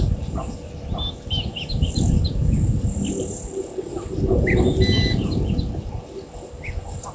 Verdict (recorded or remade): recorded